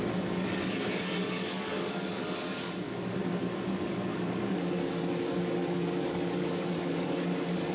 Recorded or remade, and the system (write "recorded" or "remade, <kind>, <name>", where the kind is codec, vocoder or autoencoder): remade, codec, DAC